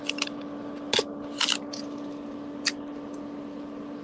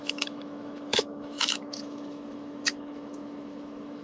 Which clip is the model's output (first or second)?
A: second